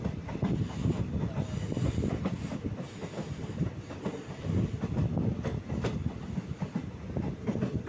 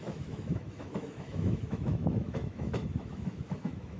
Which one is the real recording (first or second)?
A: first